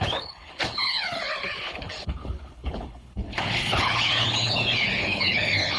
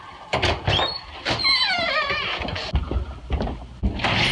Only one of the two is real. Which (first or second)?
second